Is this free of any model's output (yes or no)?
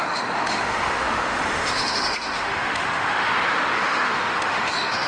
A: no